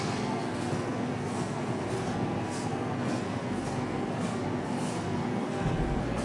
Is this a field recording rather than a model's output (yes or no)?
no